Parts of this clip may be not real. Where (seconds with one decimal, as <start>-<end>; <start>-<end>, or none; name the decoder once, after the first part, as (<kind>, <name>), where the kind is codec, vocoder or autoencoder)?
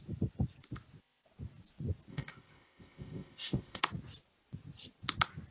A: 2.1-3.8 (codec, ZipCodec)